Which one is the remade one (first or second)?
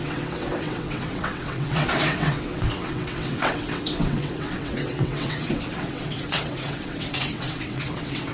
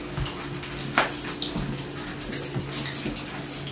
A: first